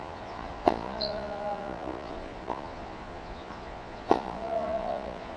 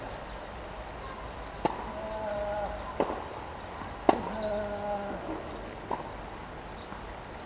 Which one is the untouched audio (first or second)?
second